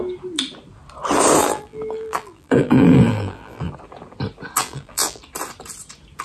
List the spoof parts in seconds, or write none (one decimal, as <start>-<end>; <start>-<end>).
1.4-3.7; 4.6-5.2